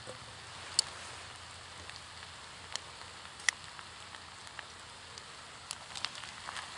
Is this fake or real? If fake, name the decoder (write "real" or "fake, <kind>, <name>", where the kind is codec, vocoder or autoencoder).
real